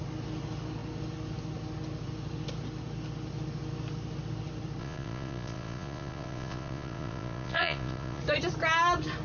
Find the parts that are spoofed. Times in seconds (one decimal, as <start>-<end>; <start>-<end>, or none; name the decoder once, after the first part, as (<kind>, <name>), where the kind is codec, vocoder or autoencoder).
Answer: 4.8-8.2 (vocoder, Vocos)